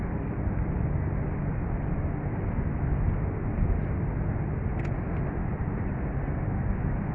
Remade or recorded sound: recorded